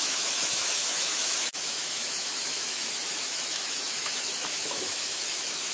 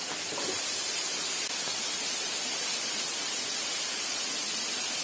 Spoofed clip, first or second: first